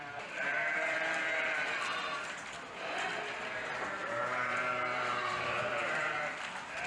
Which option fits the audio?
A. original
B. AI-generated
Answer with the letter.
B